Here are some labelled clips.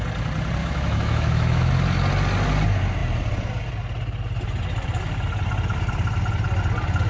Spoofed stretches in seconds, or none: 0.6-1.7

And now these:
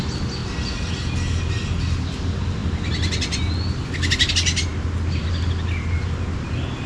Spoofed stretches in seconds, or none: none

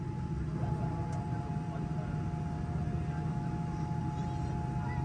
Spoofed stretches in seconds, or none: 3.3-4.0

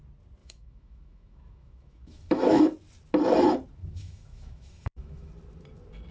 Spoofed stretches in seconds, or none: 0.4-2.6; 3.8-5.3

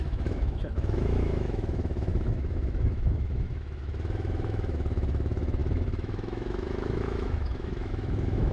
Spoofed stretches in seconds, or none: 0.0-8.5

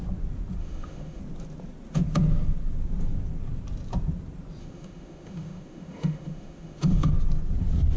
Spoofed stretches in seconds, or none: 0.6-1.2; 4.6-7.1

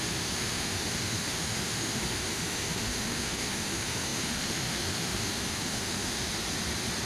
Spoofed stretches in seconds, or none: 0.0-6.3

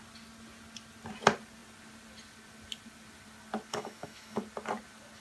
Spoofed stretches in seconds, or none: 3.7-4.4